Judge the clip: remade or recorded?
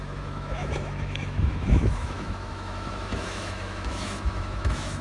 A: remade